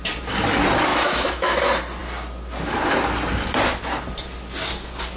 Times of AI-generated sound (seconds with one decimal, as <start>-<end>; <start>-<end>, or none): 0.9-1.6